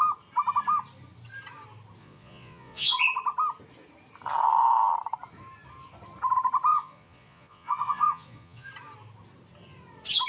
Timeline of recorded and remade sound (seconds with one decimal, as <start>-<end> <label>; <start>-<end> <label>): 0.0-2.0 recorded; 2.0-3.0 remade; 3.0-6.7 recorded; 6.7-8.7 remade; 8.7-10.3 recorded